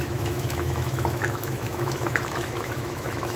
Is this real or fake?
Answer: fake